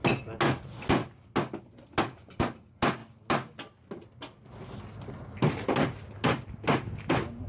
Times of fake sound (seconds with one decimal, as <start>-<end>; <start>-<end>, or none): none